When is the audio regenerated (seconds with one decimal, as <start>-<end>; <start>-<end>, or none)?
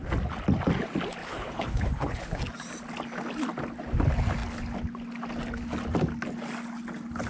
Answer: 1.2-2.4